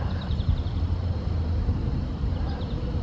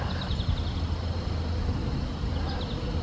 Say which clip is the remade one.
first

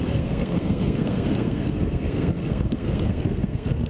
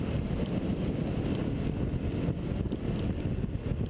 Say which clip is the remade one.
first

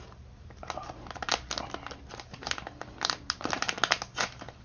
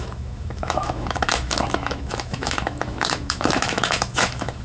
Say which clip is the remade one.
second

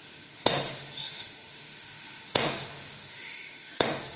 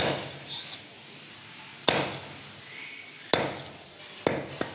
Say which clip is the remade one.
first